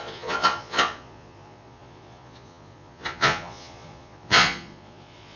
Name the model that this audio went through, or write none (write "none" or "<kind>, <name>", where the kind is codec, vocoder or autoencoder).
vocoder, Vocos